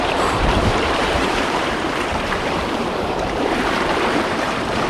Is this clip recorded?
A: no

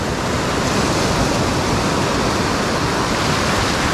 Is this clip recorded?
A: yes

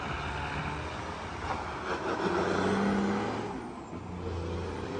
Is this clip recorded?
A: yes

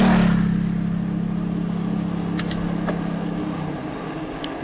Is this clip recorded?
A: yes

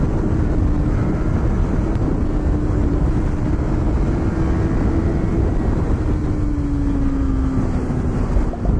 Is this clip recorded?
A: yes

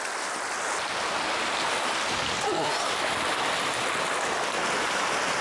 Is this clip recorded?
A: yes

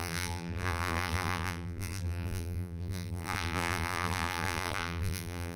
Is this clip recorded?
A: no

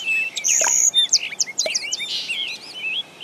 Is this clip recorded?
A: no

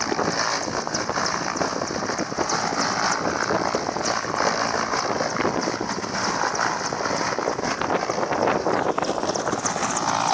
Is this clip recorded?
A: yes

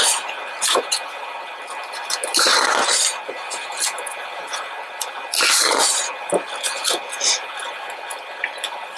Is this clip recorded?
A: no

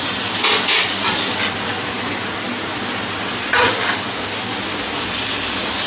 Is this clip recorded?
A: yes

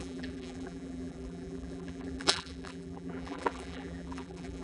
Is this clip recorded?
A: no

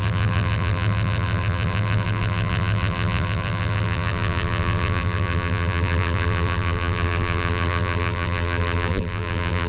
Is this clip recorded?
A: no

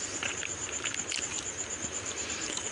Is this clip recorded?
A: no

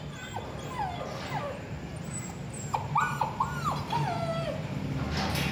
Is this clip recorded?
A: no